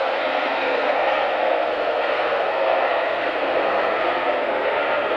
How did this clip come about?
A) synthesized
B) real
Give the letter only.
A